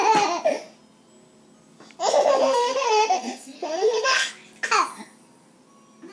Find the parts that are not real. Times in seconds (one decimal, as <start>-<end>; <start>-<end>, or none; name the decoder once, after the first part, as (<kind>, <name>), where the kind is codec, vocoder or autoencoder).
2.4-4.3 (codec, SNAC)